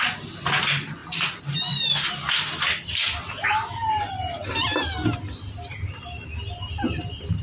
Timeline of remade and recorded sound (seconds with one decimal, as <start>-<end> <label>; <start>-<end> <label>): 0.0-7.4 recorded